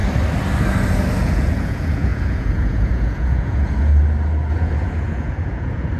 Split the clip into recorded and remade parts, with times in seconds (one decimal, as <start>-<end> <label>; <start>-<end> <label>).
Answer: 0.0-1.2 recorded; 1.2-3.9 remade; 3.9-4.5 recorded; 4.5-6.0 remade

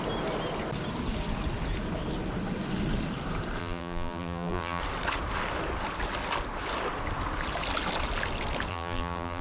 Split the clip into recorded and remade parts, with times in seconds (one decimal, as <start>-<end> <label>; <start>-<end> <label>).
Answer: 0.0-3.6 recorded; 3.6-4.8 remade; 4.8-8.7 recorded; 8.7-9.4 remade

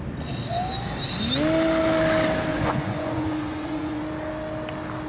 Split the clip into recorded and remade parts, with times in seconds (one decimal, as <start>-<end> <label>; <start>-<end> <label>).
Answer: 0.0-2.5 recorded; 2.5-4.0 remade; 4.0-5.1 recorded

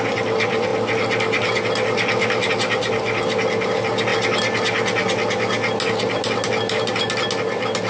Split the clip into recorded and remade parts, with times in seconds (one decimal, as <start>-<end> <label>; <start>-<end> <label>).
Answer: 0.0-7.9 recorded

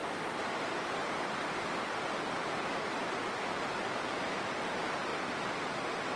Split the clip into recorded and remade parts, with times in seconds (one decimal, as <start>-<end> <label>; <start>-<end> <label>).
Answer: 0.0-5.1 remade; 5.1-5.7 recorded; 5.7-6.2 remade